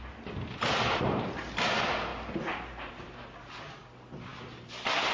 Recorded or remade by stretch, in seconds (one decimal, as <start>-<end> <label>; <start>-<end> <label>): 0.0-4.3 recorded; 4.3-5.1 remade